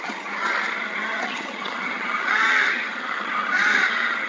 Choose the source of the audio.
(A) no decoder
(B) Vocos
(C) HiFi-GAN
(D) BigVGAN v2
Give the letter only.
C